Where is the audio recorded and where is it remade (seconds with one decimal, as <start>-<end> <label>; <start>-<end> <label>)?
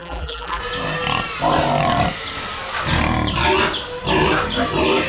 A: 0.0-0.6 remade; 0.6-5.1 recorded